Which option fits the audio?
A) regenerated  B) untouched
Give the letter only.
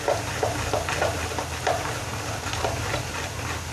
B